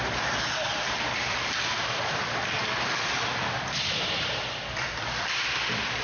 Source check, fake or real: fake